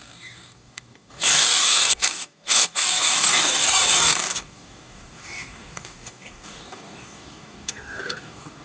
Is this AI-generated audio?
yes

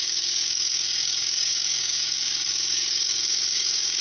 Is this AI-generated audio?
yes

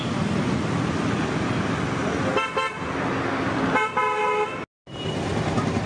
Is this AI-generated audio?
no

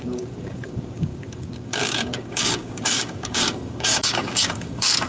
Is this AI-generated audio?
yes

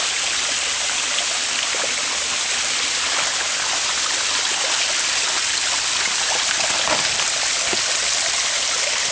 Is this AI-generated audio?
no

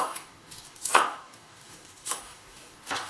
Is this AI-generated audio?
yes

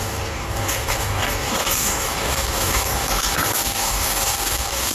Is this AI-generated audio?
yes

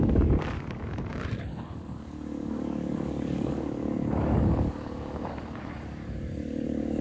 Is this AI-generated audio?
yes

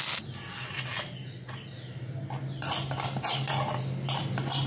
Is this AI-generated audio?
no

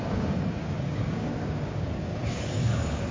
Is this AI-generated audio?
yes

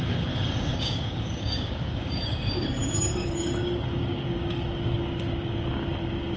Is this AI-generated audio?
yes